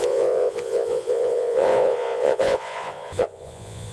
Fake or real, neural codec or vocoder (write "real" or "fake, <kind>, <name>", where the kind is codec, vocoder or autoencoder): fake, vocoder, Vocos